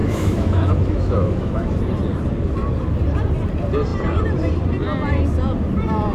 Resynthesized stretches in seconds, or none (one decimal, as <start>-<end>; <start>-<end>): 0.0-1.8